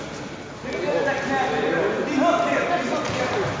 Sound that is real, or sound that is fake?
real